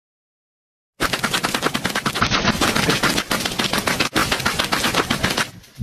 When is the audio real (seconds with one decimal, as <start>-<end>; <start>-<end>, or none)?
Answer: 0.0-5.8